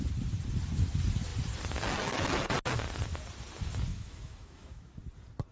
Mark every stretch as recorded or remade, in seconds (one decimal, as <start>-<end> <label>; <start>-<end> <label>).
0.0-3.9 recorded; 3.9-5.0 remade; 5.0-5.5 recorded